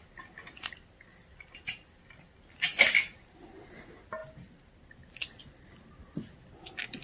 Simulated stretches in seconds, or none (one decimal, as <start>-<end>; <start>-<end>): none